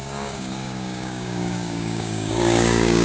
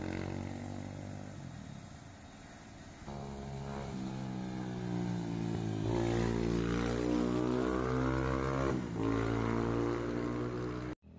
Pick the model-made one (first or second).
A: first